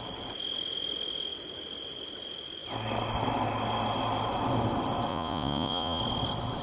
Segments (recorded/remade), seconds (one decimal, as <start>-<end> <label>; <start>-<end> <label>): 0.0-5.1 recorded; 5.1-6.0 remade; 6.0-6.6 recorded